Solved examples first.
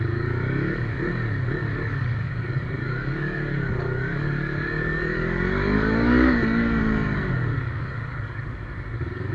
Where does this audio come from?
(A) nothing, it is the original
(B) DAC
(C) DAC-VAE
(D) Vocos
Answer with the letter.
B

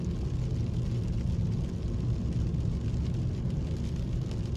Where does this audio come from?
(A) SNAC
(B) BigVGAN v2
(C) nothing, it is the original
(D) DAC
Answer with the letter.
C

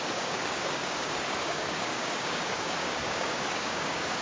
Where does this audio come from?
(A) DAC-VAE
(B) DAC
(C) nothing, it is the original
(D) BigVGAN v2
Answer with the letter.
B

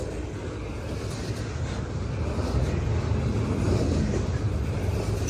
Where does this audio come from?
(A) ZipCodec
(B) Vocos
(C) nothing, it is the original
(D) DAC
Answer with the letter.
C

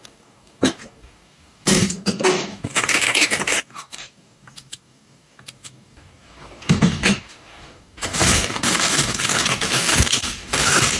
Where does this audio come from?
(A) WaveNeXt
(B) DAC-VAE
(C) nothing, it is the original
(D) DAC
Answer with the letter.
D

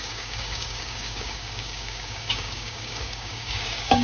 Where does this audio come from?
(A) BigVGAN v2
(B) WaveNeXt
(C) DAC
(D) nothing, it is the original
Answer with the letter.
C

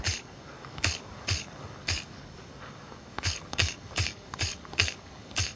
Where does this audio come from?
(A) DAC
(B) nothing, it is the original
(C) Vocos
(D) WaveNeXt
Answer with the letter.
A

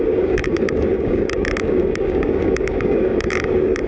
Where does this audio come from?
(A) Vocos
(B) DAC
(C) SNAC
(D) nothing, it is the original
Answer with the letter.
B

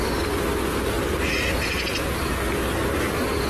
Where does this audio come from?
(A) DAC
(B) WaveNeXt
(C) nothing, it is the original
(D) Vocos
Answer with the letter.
C